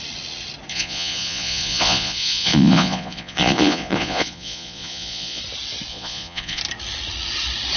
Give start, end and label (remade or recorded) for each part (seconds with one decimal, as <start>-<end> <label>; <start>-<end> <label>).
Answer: 0.0-0.7 recorded; 0.7-5.4 remade; 5.4-5.9 recorded; 5.9-6.6 remade; 6.6-7.8 recorded